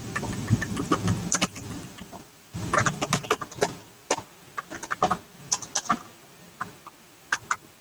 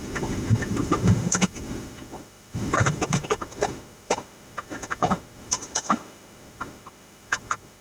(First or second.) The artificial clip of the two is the second